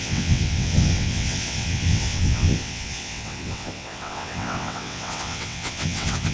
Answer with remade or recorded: remade